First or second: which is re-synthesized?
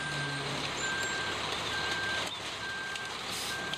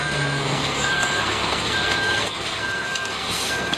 second